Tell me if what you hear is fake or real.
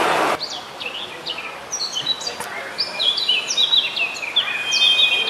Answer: fake